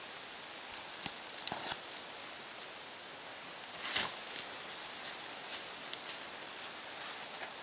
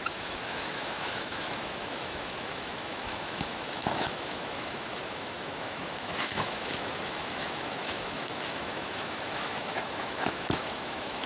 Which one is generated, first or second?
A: second